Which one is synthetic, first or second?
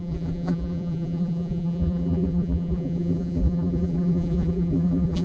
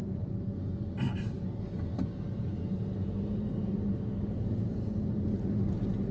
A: first